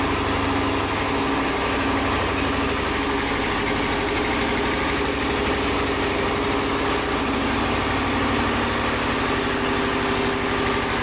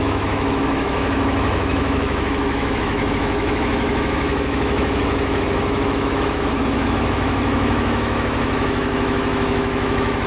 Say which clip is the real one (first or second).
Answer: first